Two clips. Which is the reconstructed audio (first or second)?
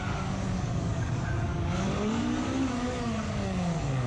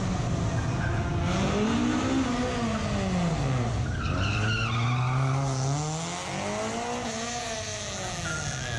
first